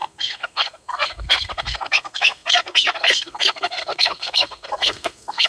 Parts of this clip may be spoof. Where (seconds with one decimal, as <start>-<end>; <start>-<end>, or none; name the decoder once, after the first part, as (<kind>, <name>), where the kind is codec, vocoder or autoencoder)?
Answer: 0.0-5.5 (codec, SNAC)